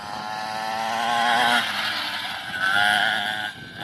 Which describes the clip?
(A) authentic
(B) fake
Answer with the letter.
A